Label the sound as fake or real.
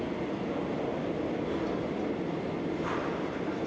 real